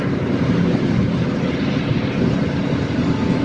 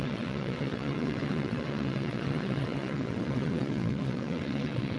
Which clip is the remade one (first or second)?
second